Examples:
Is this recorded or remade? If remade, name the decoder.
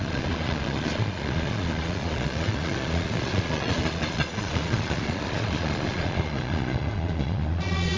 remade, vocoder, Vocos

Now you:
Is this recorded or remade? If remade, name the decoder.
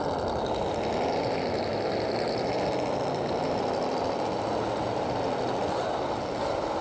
recorded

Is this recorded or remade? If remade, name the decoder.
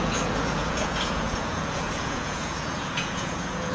remade, vocoder, Vocos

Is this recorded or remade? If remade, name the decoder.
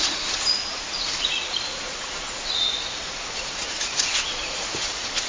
remade, vocoder, Vocos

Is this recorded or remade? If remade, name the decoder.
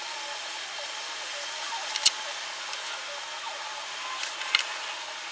recorded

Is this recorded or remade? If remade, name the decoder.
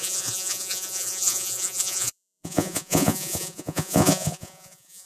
remade, vocoder, Vocos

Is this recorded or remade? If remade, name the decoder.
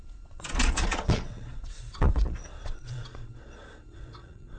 remade, vocoder, Vocos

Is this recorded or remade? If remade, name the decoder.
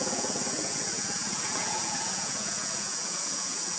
remade, vocoder, Vocos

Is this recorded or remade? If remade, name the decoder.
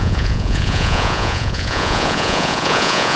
remade, vocoder, Vocos